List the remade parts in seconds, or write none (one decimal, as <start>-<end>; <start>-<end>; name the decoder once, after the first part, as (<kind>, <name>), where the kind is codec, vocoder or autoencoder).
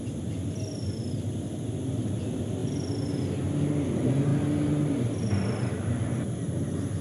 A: none